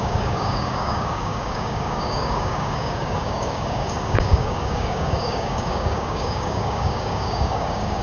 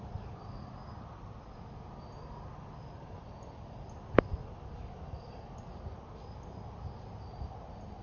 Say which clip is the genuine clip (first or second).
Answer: second